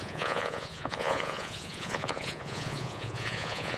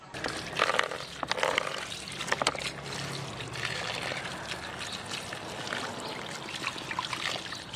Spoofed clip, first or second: first